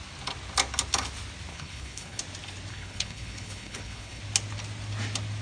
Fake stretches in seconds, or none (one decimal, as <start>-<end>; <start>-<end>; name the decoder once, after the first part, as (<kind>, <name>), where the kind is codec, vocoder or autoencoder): 1.5-2.2 (codec, HILCodec); 2.7-4.2